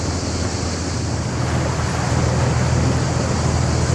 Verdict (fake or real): real